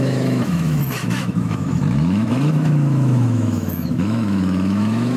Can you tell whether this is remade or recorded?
remade